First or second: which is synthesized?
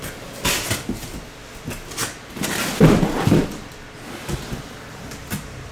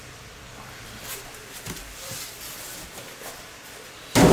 second